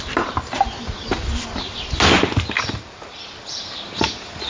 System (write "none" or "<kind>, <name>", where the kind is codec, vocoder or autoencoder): none